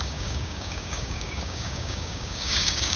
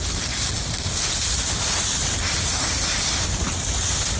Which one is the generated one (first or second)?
first